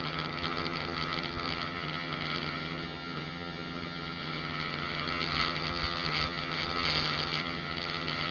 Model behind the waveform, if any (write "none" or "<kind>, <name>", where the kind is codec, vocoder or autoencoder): vocoder, HiFi-GAN